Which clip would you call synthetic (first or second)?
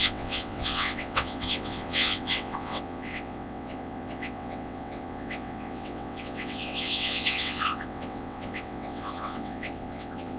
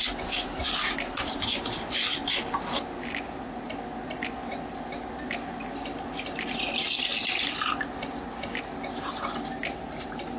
first